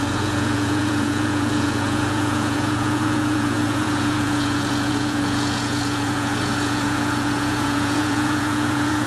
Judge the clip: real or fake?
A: fake